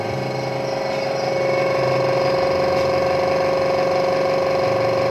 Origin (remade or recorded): recorded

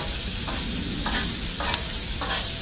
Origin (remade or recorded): recorded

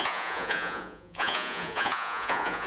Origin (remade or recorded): remade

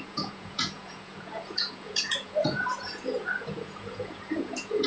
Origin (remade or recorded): remade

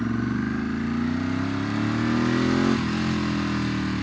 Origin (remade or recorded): recorded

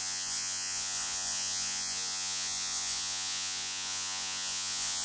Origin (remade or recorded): remade